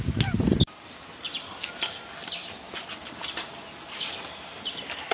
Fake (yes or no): no